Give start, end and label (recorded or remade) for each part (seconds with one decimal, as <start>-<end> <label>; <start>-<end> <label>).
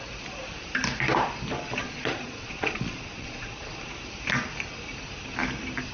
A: 0.0-1.8 recorded; 1.8-3.8 remade; 3.8-5.9 recorded